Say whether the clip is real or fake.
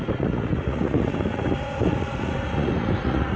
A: fake